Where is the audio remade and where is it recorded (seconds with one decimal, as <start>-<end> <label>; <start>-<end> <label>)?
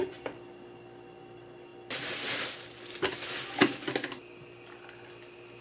0.0-5.6 recorded